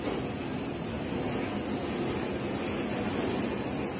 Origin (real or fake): real